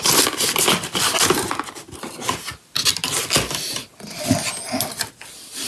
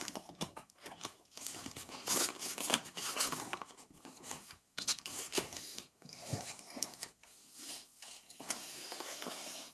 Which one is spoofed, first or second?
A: second